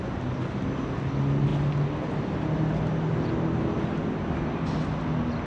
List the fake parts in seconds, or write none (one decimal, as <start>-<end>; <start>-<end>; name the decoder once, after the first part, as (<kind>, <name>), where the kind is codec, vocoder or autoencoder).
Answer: none

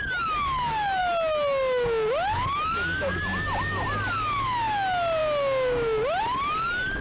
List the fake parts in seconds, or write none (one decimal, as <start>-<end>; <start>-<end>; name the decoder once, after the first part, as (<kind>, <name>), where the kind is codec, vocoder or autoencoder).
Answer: none

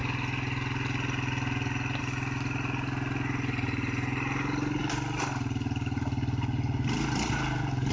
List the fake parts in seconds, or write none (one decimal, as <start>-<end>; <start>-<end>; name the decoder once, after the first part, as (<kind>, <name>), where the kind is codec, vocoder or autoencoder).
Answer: none

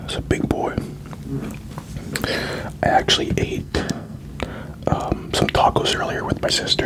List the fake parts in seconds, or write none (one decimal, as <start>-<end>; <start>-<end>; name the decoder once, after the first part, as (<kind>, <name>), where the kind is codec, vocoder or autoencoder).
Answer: 3.6-4.2 (codec, SNAC)

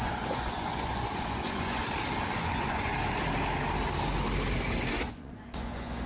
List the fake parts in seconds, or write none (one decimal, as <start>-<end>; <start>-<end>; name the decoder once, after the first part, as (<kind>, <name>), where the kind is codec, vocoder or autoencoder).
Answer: 0.0-1.8 (vocoder, Vocos); 2.4-2.9; 5.1-6.1

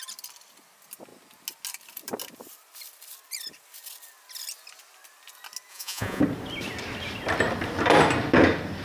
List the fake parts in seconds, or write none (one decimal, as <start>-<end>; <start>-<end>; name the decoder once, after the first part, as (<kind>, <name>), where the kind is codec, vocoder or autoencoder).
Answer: 5.7-6.2 (vocoder, Vocos)

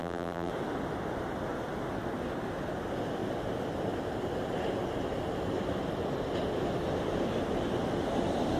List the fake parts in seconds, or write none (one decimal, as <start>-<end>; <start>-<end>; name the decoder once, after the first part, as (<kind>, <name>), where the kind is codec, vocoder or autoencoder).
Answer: 0.0-0.5 (vocoder, BigVGAN v2)

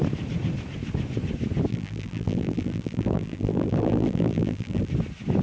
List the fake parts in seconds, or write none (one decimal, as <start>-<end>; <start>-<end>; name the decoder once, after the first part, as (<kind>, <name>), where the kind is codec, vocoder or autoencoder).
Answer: 1.7-4.9 (vocoder, BigVGAN v2)